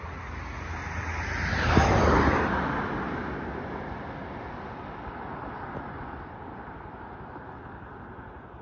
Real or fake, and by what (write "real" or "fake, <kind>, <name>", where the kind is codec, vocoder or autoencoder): real